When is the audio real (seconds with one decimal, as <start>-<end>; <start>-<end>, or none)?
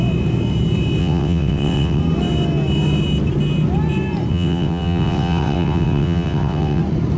0.0-1.0; 2.0-4.3; 6.8-7.2